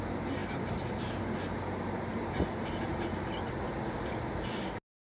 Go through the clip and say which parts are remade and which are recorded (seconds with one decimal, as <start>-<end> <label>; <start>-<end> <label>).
0.0-5.1 recorded